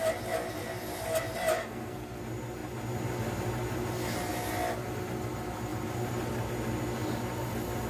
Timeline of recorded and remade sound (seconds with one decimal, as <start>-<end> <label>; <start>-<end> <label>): 0.0-1.6 recorded; 1.6-2.2 remade; 2.2-7.9 recorded

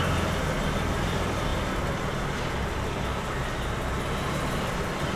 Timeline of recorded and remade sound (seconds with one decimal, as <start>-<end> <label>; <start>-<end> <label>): 0.0-5.2 recorded

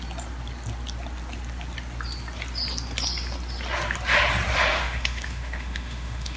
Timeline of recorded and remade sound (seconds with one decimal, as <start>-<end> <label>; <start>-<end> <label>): 0.0-4.7 recorded; 4.7-6.4 remade

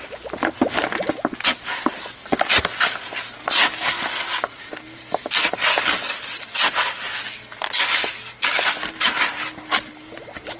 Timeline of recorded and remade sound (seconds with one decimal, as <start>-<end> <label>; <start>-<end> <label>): 0.0-2.2 recorded; 2.2-4.1 remade; 4.1-10.6 recorded

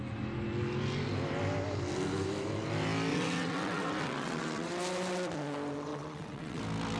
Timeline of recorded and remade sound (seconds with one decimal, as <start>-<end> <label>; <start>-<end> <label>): 0.0-3.1 recorded; 3.1-4.7 remade; 4.7-5.9 recorded; 5.9-6.6 remade; 6.6-7.0 recorded